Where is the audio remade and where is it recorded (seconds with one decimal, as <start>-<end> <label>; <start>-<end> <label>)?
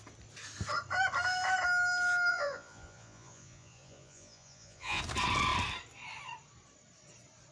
0.0-2.3 recorded; 2.3-5.0 remade; 5.0-7.5 recorded